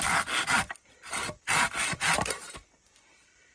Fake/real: real